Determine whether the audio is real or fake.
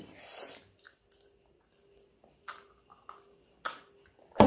real